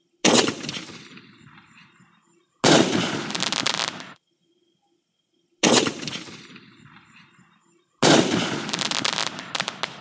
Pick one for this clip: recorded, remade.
recorded